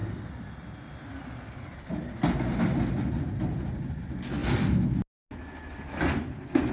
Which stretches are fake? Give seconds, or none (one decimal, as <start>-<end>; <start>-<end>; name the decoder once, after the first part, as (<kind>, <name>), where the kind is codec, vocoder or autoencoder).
none